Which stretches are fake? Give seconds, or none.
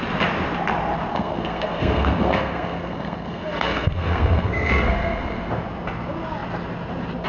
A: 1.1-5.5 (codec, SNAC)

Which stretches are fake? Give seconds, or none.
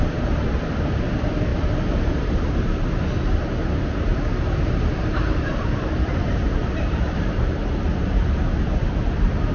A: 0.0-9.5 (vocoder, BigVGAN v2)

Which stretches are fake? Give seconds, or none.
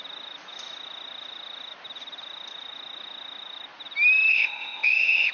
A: 4.3-5.3 (codec, ZipCodec)